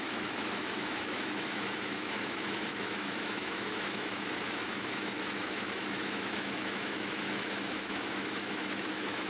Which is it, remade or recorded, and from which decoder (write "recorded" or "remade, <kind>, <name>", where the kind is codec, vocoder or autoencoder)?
remade, autoencoder, DAC-VAE